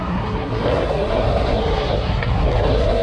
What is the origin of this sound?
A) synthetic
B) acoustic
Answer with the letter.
A